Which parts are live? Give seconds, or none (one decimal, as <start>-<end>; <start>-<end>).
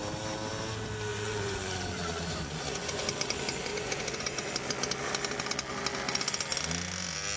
0.0-1.1; 3.0-3.7; 4.5-7.4